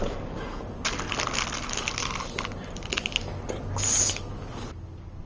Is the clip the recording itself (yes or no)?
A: yes